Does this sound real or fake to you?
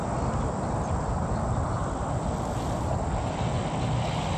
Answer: real